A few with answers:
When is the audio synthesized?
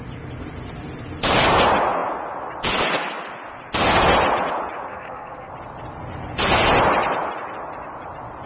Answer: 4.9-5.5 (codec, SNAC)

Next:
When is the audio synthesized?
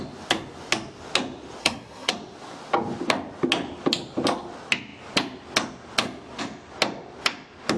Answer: 1.6-2.1 (codec, SNAC)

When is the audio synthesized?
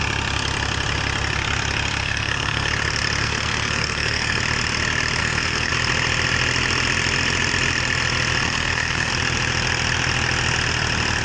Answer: 2.0-2.7 (codec, SNAC); 3.2-4.4; 5.2-5.7; 8.4-9.1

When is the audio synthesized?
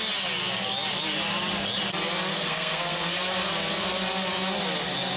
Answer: 2.3-3.0 (codec, SNAC)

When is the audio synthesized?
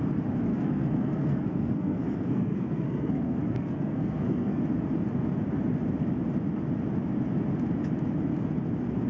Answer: 0.5-4.6 (codec, SNAC)